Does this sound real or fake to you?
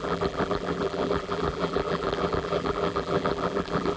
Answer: fake